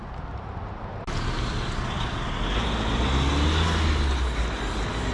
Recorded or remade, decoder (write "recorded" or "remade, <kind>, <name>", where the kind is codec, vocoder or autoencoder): recorded